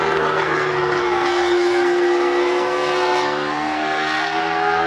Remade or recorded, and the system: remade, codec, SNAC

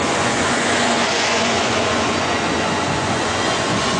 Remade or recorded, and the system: remade, vocoder, Vocos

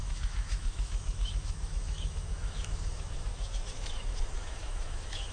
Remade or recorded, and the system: remade, autoencoder, DAC-VAE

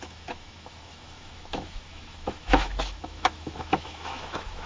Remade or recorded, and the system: remade, autoencoder, DAC-VAE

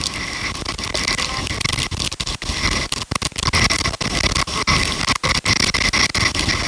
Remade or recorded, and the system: recorded